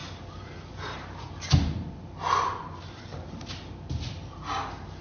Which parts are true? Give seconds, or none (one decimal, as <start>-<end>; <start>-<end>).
0.0-5.0